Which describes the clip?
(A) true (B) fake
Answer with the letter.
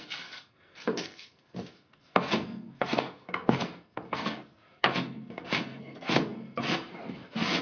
B